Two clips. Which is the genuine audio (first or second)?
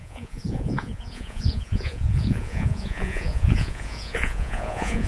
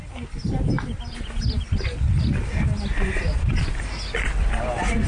second